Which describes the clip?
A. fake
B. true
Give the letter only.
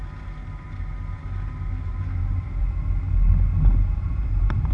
B